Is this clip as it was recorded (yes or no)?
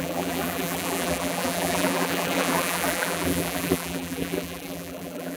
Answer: no